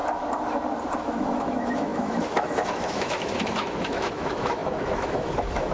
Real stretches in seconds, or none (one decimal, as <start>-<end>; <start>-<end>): 0.0-1.0